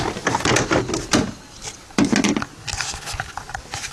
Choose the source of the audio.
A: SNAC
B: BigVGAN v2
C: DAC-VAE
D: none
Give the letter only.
D